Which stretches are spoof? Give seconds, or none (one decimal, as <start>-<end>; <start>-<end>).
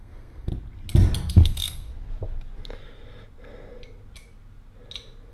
0.0-0.5; 1.3-1.9